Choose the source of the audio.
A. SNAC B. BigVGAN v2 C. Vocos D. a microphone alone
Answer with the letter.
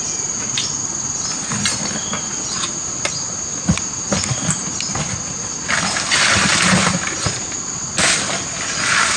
D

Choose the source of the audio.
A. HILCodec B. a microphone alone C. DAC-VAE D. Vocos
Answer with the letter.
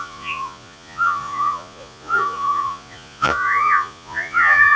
D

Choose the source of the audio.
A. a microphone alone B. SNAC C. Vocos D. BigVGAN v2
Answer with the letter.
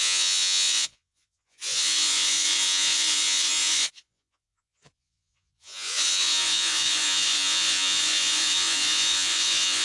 C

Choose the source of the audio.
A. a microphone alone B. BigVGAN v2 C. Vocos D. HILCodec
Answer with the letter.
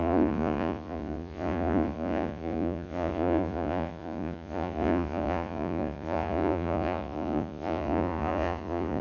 C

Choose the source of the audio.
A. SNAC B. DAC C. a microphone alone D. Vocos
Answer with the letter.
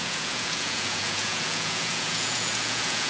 D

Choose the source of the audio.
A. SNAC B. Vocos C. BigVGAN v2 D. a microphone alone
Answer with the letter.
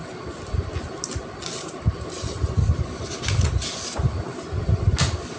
D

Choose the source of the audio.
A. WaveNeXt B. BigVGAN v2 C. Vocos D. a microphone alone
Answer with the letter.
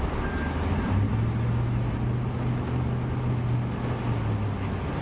D